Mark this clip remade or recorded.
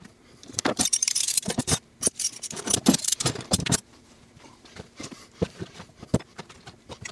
remade